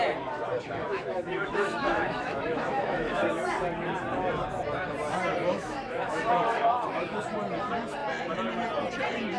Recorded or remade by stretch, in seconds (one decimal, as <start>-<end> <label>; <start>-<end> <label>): 0.0-0.8 recorded; 0.8-3.5 remade; 3.5-5.4 recorded; 5.4-7.2 remade; 7.2-9.4 recorded

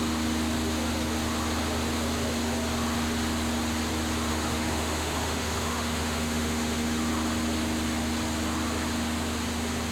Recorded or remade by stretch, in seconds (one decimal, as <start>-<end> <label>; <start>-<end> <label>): 0.0-4.3 recorded; 4.3-7.1 remade; 7.1-9.9 recorded

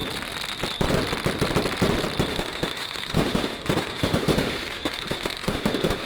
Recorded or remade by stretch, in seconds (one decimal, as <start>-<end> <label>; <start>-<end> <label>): 0.0-2.3 recorded; 2.3-6.1 remade

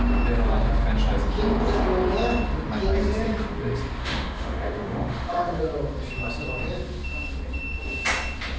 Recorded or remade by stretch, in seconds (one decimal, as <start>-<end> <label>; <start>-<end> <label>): 0.0-4.0 recorded; 4.0-5.6 remade; 5.6-8.6 recorded

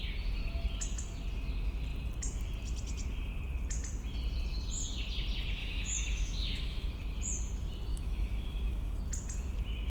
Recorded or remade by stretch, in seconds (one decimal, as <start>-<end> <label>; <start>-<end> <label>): 0.0-5.6 recorded; 5.6-6.9 remade; 6.9-7.9 recorded; 7.9-9.0 remade; 9.0-9.9 recorded

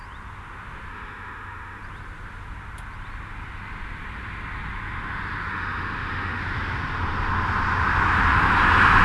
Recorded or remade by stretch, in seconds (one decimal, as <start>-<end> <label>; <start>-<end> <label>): 0.0-0.9 recorded; 0.9-1.8 remade; 1.8-5.5 recorded; 5.5-6.4 remade; 6.4-9.0 recorded

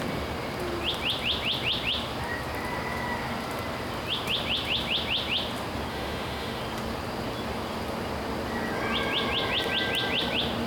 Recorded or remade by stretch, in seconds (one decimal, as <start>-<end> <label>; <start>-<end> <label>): 0.0-5.9 recorded; 5.9-6.6 remade; 6.6-10.7 recorded

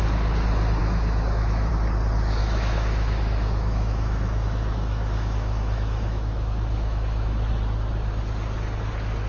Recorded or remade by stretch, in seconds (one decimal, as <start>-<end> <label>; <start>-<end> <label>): 0.0-0.8 recorded; 0.8-1.7 remade; 1.7-2.4 recorded; 2.4-7.5 remade; 7.5-9.3 recorded